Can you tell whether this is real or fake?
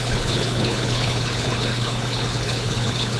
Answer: fake